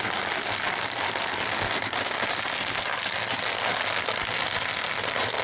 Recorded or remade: recorded